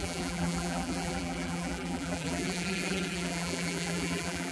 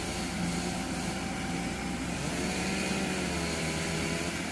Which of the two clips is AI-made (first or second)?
first